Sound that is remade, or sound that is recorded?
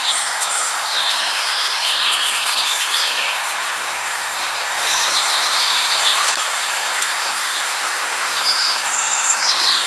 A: remade